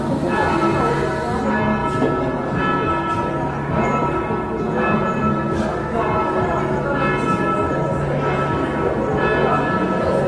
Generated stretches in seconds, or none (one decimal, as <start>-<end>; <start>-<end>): none